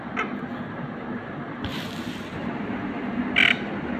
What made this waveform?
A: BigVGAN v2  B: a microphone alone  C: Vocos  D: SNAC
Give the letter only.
B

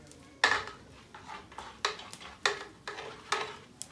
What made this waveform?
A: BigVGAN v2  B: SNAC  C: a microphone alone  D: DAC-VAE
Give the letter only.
C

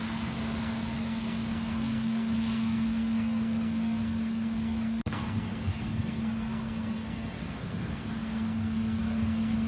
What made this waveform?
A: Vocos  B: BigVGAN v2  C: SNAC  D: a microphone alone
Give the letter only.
C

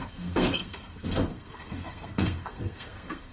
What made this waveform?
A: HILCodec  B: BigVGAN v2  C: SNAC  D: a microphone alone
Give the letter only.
C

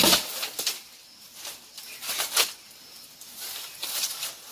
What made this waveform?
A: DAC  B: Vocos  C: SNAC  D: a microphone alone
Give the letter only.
D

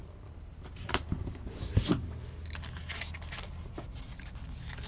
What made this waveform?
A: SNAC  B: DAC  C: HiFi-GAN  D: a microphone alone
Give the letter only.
D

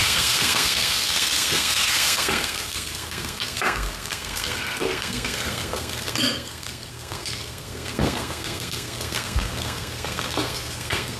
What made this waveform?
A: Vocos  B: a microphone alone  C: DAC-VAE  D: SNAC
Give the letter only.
D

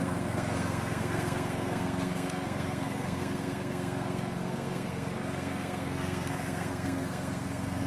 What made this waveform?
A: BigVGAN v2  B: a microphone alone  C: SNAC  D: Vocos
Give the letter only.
C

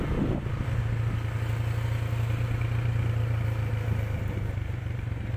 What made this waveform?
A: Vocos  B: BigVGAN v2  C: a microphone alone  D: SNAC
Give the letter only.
C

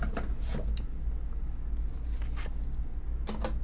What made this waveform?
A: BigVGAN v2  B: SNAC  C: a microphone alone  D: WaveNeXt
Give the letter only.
C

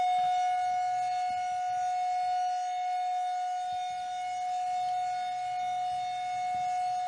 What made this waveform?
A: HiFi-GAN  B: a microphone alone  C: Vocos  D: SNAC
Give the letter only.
B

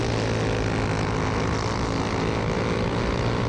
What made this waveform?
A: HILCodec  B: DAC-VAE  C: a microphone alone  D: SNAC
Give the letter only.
C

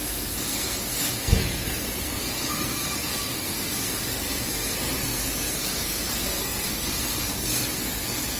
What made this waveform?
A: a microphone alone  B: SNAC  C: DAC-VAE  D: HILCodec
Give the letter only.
B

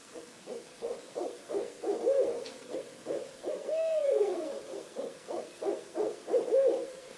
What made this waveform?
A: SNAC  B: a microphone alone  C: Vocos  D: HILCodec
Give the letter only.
A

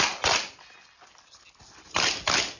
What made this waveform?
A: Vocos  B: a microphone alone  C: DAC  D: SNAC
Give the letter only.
B